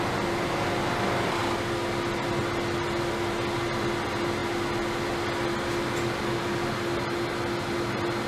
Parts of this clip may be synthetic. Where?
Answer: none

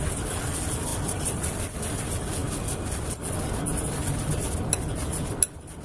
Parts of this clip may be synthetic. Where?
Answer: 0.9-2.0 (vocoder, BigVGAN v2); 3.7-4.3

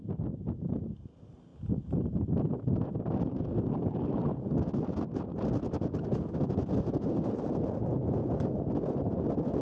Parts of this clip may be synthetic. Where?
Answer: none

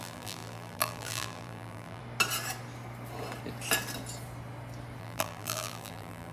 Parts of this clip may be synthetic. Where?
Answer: 0.0-2.0 (vocoder, BigVGAN v2); 5.0-6.3

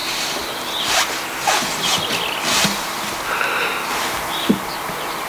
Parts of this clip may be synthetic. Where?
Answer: none

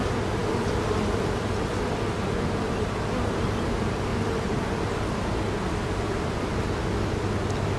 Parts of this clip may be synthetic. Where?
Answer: none